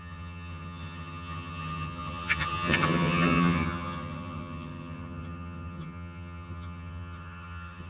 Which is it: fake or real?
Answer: fake